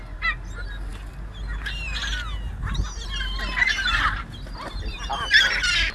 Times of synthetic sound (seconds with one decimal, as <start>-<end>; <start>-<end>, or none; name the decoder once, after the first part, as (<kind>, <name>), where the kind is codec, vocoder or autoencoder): none